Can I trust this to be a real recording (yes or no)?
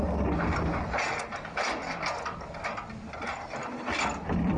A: yes